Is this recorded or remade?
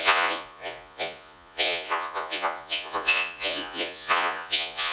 remade